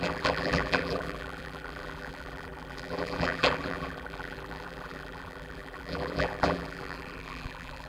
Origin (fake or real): fake